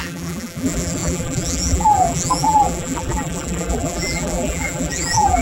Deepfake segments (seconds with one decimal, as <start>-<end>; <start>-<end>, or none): 0.0-5.4